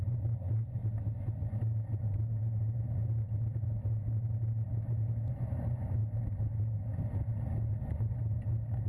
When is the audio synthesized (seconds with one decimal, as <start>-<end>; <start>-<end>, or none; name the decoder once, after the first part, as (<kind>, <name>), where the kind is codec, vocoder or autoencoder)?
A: 0.0-0.8 (vocoder, Vocos); 5.3-6.0; 7.8-8.2